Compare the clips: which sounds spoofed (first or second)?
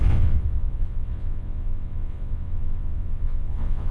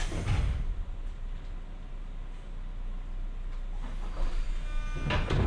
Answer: first